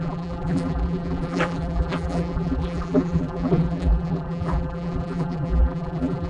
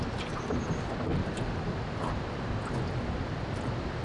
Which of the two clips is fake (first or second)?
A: first